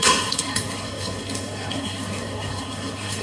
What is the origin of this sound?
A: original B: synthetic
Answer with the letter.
B